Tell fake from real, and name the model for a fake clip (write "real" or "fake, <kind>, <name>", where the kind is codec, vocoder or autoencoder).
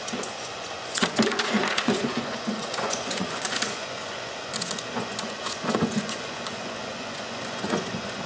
fake, vocoder, Vocos